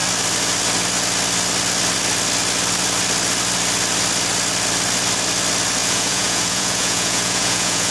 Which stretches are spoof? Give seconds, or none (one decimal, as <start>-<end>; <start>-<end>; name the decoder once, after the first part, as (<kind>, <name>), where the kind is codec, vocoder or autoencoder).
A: 5.8-7.9 (vocoder, Vocos)